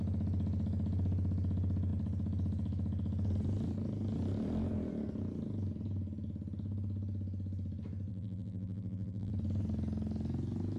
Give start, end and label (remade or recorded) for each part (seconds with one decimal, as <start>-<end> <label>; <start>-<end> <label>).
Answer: 0.0-8.1 recorded; 8.1-9.3 remade; 9.3-10.8 recorded